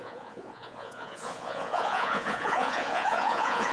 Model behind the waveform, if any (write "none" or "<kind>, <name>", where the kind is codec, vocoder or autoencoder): vocoder, Vocos